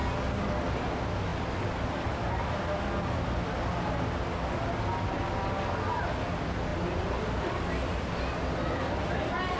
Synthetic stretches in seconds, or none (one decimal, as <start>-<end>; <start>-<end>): none